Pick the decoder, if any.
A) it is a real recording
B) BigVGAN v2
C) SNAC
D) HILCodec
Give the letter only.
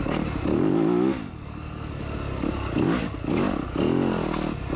A